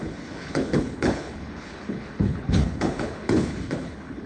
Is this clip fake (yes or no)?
yes